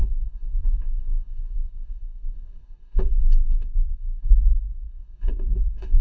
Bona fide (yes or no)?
no